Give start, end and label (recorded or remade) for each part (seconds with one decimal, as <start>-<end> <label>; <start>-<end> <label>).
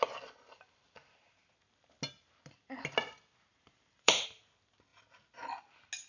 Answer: 0.0-3.5 recorded; 3.5-4.4 remade; 4.4-6.1 recorded